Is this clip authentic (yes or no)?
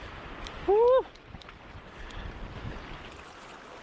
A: yes